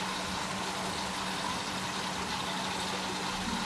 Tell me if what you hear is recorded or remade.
recorded